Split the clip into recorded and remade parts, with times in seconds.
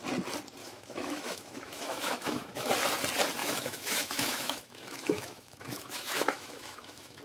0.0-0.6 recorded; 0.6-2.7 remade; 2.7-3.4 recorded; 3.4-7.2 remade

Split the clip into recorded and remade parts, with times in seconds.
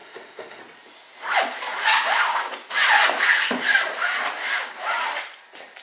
0.0-0.6 remade; 0.6-5.8 recorded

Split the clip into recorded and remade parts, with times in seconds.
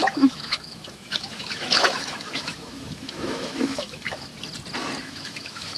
0.0-4.3 remade; 4.3-5.0 recorded; 5.0-5.8 remade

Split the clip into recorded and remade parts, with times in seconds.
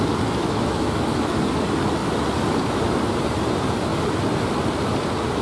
0.0-0.4 recorded; 0.4-1.4 remade; 1.4-5.4 recorded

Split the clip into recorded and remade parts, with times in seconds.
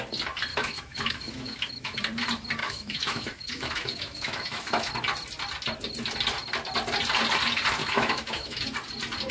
0.0-0.5 recorded; 0.5-2.0 remade; 2.0-2.6 recorded; 2.6-4.9 remade; 4.9-7.8 recorded; 7.8-8.6 remade; 8.6-9.3 recorded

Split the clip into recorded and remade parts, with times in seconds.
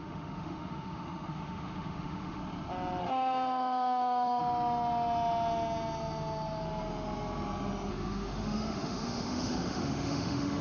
0.0-2.4 remade; 2.4-3.0 recorded; 3.0-4.4 remade; 4.4-7.9 recorded; 7.9-10.6 remade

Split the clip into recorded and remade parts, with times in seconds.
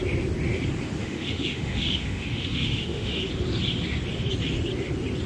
0.0-1.0 recorded; 1.0-3.2 remade; 3.2-5.3 recorded